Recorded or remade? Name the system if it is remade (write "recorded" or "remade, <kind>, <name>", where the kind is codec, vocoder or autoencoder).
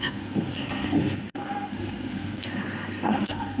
remade, codec, SNAC